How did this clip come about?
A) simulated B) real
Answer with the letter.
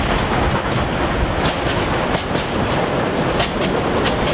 B